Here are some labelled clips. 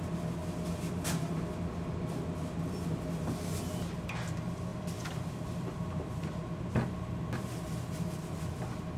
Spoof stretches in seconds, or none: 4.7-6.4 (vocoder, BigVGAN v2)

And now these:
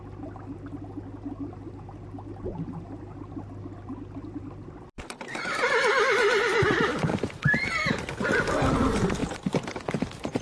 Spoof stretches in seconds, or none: 9.2-9.9 (vocoder, BigVGAN v2)

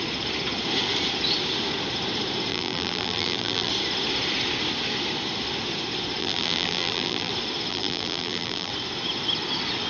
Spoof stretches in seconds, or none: 2.5-3.7 (vocoder, BigVGAN v2); 6.2-7.3; 7.7-8.7

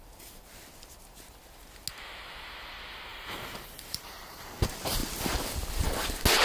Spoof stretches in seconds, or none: 3.1-4.5 (vocoder, BigVGAN v2)

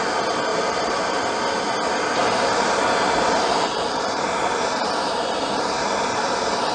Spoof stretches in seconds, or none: 0.5-1.2 (vocoder, BigVGAN v2); 2.2-6.2

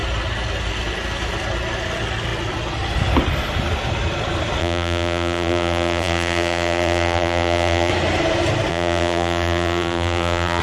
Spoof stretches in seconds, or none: 4.6-7.9 (vocoder, BigVGAN v2); 8.7-10.6

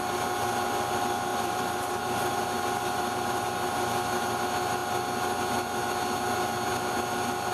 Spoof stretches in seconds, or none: 1.3-2.3 (vocoder, BigVGAN v2)